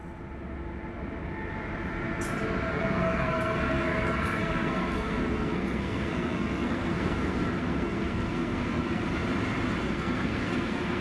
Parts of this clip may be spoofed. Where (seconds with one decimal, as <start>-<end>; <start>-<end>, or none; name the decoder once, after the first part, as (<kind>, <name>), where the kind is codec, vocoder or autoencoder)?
2.7-9.2 (codec, SNAC); 9.8-11.0